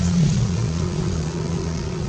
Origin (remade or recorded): remade